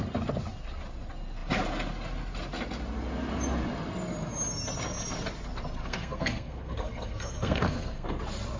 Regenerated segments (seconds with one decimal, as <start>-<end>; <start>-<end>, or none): 5.8-8.2